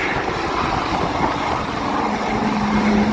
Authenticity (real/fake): fake